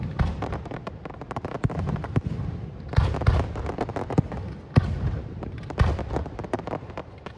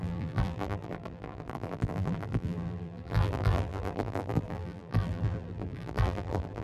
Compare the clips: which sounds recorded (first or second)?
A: first